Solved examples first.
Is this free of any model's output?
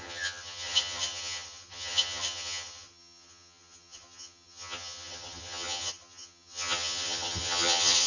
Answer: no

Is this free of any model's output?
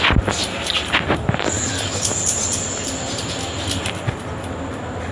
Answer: yes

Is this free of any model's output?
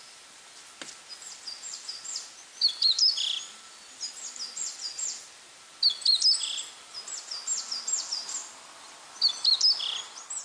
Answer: yes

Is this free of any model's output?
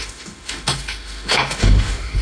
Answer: no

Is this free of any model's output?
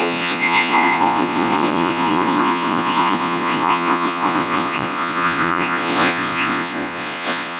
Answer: no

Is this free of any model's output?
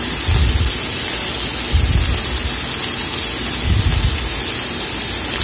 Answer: yes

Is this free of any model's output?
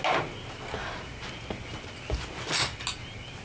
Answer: yes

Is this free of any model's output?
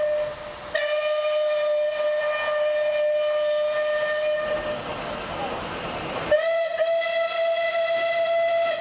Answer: yes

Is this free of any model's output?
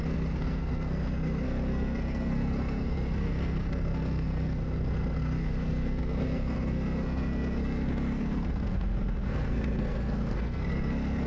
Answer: no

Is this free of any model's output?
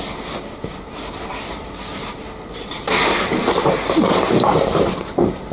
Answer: yes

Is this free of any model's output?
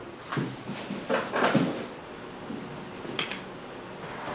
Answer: yes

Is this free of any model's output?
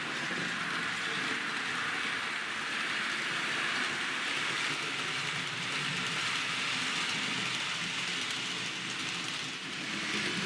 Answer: yes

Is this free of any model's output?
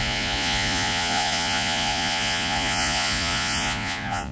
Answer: no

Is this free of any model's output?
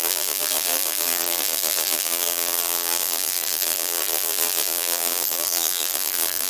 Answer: no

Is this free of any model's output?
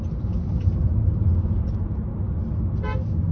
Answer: yes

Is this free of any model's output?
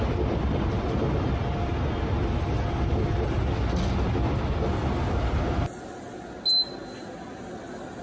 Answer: yes